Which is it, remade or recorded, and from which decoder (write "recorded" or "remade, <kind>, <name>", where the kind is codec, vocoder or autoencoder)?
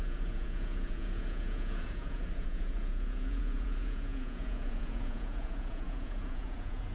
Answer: remade, vocoder, Vocos